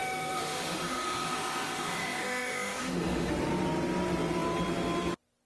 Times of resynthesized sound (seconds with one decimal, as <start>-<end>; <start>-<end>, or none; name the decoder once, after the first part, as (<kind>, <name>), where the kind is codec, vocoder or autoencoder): 0.0-3.3 (autoencoder, DAC-VAE)